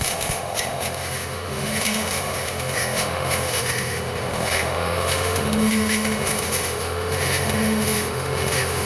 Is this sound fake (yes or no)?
yes